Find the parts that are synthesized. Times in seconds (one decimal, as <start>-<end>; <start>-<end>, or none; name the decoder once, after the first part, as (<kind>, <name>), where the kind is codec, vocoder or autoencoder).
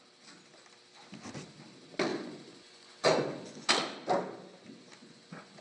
2.1-3.7 (vocoder, Vocos); 5.0-5.6